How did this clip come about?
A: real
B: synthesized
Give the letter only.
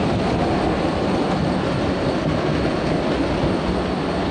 A